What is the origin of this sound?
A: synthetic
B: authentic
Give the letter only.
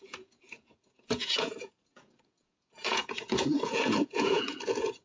A